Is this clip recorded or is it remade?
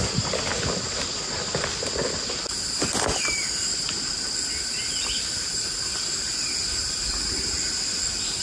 recorded